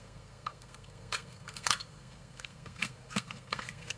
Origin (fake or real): fake